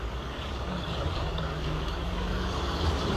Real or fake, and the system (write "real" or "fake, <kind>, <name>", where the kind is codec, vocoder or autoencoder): fake, codec, DAC